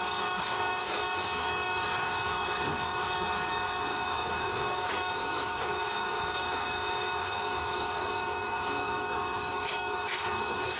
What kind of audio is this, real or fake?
fake